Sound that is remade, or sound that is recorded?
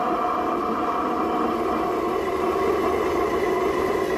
recorded